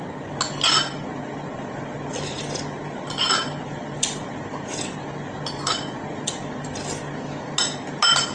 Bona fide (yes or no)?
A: yes